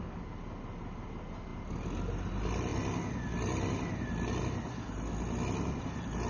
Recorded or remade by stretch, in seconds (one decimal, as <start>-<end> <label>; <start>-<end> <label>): 0.0-6.3 recorded

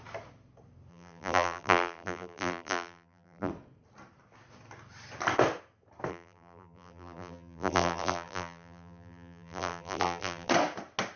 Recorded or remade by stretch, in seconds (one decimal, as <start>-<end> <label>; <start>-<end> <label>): 0.0-0.9 recorded; 0.9-3.5 remade; 3.5-6.1 recorded; 6.1-10.5 remade; 10.5-11.2 recorded

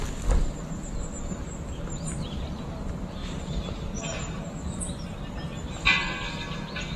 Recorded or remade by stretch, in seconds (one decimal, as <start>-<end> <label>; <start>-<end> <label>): 0.0-7.0 recorded

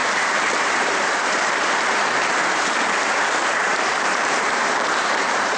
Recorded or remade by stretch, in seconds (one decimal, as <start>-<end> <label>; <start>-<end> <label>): 0.0-5.6 remade

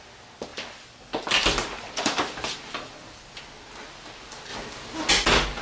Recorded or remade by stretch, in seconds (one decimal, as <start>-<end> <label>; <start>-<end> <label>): 0.0-0.5 recorded; 0.5-3.7 remade; 3.7-5.6 recorded